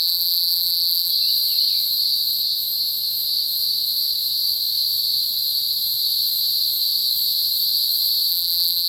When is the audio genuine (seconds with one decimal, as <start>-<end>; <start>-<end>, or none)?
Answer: 1.1-8.3